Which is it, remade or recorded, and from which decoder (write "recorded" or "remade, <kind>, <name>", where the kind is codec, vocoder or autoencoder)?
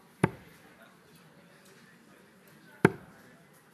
recorded